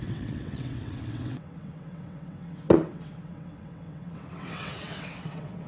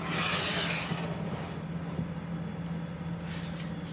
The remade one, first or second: first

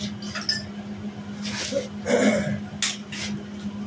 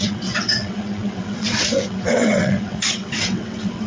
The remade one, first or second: second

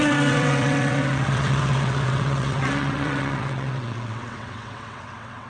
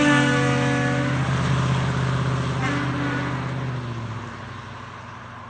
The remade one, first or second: first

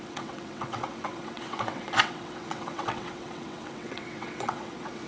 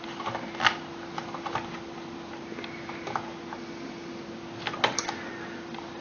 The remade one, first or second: first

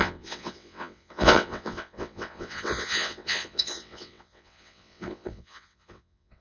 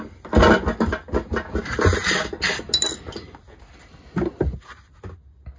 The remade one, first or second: first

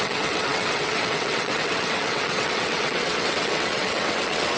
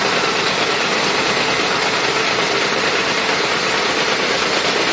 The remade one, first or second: first